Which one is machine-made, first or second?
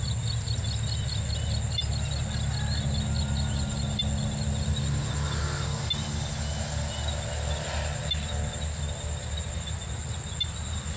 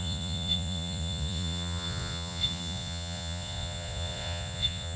second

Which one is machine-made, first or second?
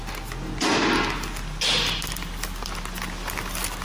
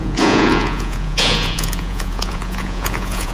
second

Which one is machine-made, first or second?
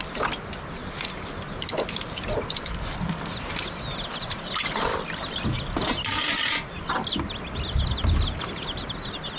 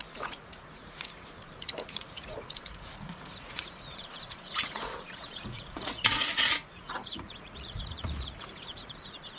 second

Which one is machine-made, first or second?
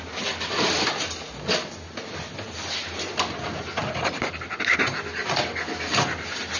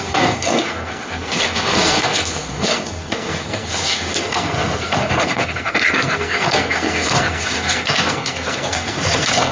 second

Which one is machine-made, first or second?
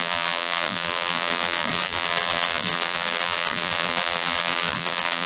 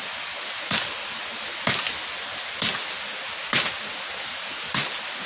first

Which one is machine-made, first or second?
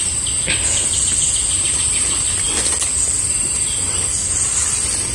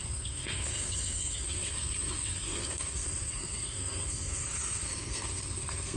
second